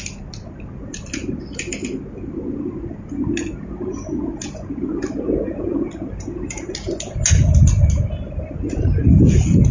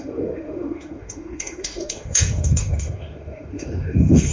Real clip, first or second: first